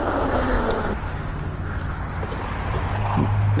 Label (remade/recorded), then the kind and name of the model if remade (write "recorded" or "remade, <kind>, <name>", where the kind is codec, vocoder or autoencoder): recorded